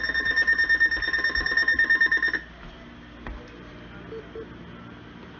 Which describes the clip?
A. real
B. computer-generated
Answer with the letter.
A